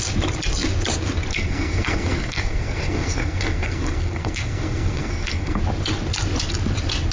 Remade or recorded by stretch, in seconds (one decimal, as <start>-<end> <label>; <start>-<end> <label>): 0.0-1.3 recorded; 1.3-5.6 remade; 5.6-7.1 recorded